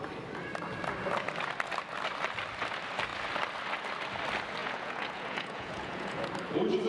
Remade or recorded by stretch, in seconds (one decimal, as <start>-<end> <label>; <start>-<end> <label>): 0.0-4.6 recorded; 4.6-6.3 remade; 6.3-6.9 recorded